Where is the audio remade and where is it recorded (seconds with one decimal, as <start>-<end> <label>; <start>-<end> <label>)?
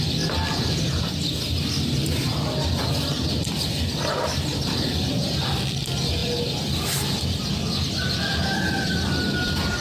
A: 0.0-9.8 recorded